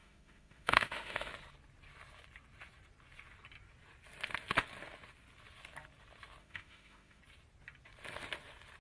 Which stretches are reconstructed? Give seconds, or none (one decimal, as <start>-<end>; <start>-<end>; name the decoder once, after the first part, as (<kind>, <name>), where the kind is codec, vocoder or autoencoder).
0.0-1.3 (autoencoder, DAC-VAE); 6.4-7.2